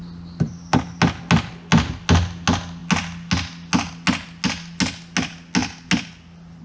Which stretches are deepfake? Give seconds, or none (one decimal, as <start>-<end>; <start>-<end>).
none